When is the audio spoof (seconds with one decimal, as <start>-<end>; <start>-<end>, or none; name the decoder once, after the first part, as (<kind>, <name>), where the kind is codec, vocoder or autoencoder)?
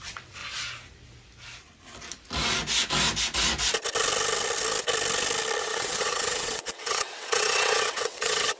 0.0-0.4 (vocoder, WaveNeXt); 5.6-8.6